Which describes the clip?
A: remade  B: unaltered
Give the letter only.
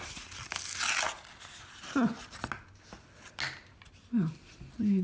B